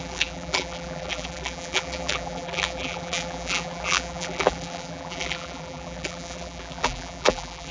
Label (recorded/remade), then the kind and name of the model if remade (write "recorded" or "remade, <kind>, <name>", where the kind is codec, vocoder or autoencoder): remade, vocoder, BigVGAN v2